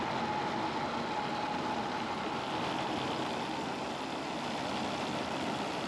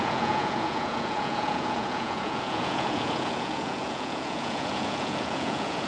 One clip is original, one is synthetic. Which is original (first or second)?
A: first